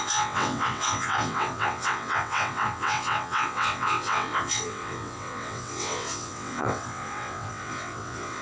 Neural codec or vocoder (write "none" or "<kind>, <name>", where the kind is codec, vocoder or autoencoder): vocoder, WaveNeXt